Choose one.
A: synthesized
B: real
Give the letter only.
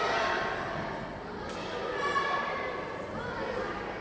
B